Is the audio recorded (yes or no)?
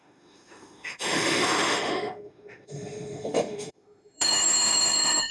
no